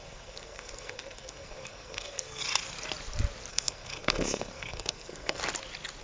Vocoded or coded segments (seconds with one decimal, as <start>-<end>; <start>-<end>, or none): 0.0-2.4; 3.5-5.4